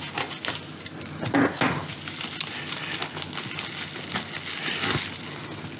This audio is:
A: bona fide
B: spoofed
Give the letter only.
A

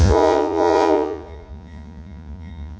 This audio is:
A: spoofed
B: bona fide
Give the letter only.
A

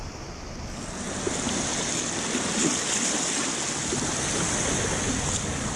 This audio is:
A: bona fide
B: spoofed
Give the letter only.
A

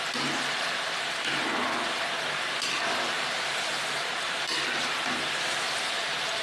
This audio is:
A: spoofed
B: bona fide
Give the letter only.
A